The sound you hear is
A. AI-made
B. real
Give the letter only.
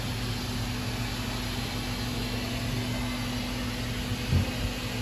B